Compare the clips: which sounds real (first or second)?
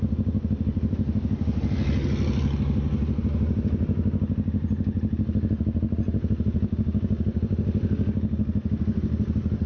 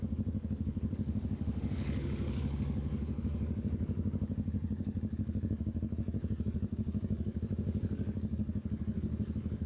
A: first